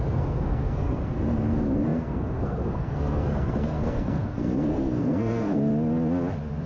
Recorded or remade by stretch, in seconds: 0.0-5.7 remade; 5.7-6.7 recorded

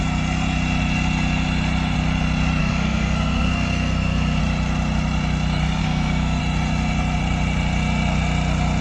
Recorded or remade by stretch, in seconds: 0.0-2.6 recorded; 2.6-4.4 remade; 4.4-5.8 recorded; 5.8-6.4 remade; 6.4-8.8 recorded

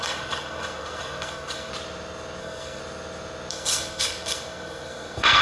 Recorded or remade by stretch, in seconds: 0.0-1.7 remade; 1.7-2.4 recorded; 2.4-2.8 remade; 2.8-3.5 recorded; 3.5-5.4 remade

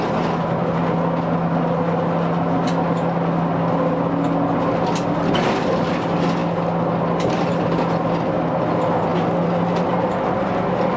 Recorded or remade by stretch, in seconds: 0.0-11.0 recorded